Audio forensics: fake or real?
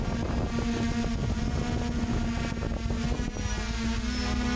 real